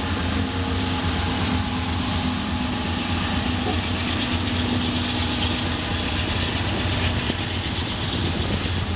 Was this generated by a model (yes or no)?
no